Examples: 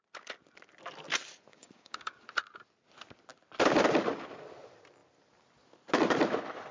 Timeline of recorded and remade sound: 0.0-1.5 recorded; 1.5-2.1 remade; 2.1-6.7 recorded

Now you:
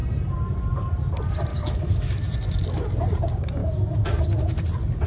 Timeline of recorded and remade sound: 0.0-1.5 recorded; 1.5-2.1 remade; 2.1-3.6 recorded; 3.6-4.2 remade; 4.2-5.1 recorded

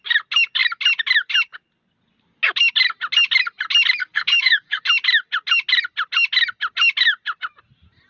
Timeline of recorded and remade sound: 0.0-4.0 recorded; 4.0-4.8 remade; 4.8-8.1 recorded

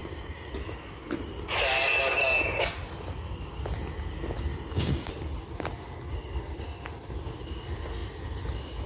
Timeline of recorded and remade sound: 0.0-0.5 remade; 0.5-4.5 recorded; 4.5-5.1 remade; 5.1-8.9 recorded

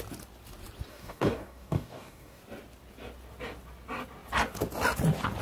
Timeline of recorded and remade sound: 0.0-0.9 recorded; 0.9-2.4 remade; 2.4-5.4 recorded

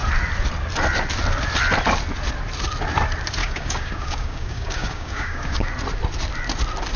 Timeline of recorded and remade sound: 0.0-3.4 recorded; 3.4-5.7 remade; 5.7-7.0 recorded